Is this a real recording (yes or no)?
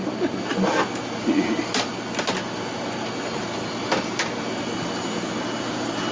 yes